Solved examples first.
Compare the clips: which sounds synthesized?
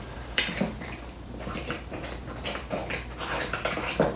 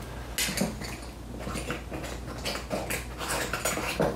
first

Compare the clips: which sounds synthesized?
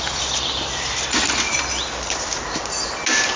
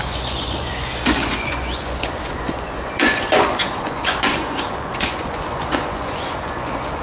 second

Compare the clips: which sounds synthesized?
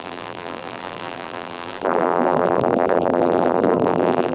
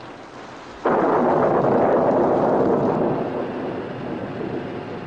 first